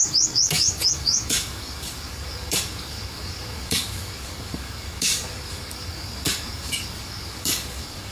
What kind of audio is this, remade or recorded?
remade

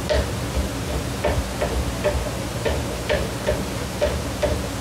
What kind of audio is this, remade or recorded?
recorded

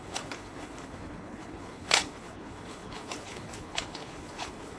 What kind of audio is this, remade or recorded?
remade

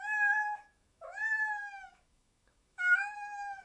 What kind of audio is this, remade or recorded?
remade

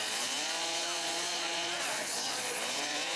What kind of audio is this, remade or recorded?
remade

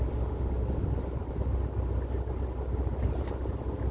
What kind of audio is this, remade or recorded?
recorded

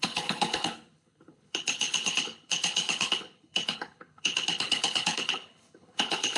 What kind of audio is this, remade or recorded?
remade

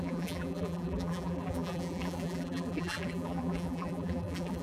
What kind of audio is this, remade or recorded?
remade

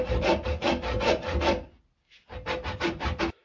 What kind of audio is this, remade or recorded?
recorded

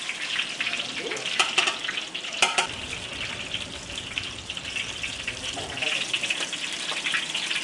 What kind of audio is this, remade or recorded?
remade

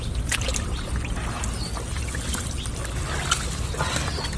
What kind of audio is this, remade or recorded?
recorded